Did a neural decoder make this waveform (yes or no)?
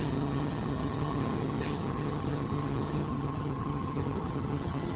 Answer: yes